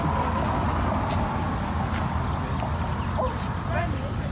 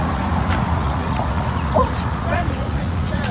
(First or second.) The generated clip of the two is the second